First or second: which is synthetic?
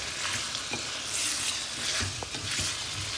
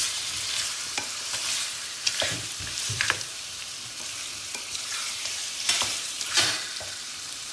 second